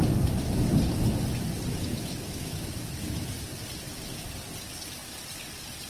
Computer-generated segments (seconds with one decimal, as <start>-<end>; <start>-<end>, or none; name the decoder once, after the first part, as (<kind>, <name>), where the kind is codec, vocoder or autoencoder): 1.9-3.3 (autoencoder, DAC-VAE)